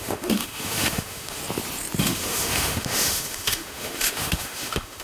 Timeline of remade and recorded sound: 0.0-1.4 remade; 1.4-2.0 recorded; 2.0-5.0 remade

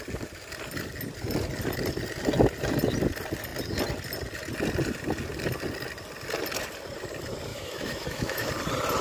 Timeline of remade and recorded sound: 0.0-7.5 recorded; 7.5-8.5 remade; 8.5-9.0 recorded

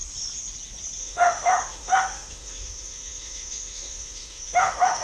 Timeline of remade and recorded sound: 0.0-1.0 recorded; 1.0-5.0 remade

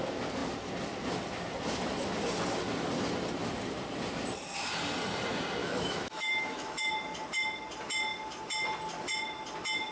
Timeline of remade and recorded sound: 0.0-5.6 recorded; 5.6-6.9 remade; 6.9-9.9 recorded

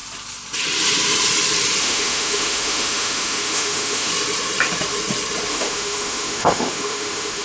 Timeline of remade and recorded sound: 0.0-1.8 recorded; 1.8-4.1 remade; 4.1-5.5 recorded; 5.5-7.4 remade

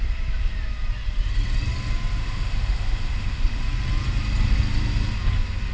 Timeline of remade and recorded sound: 0.0-2.2 recorded; 2.2-3.6 remade; 3.6-5.7 recorded

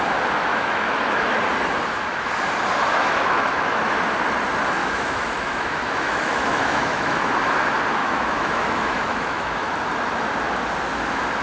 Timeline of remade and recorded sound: 0.0-0.5 recorded; 0.5-1.4 remade; 1.4-2.9 recorded; 2.9-3.8 remade; 3.8-4.8 recorded; 4.8-7.3 remade; 7.3-8.0 recorded; 8.0-9.7 remade; 9.7-11.4 recorded